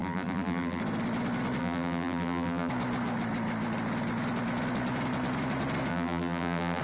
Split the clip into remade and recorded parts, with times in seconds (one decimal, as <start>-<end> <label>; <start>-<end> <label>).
0.0-0.8 remade; 0.8-1.6 recorded; 1.6-2.7 remade; 2.7-5.9 recorded; 5.9-6.8 remade